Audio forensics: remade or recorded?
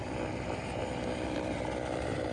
recorded